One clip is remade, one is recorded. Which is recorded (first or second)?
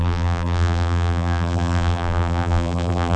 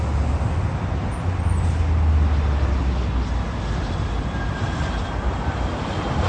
second